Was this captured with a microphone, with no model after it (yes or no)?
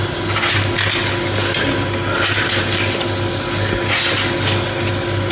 yes